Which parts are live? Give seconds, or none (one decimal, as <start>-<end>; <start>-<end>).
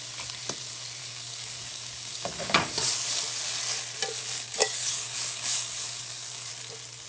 0.0-1.0; 2.9-4.1; 6.5-7.1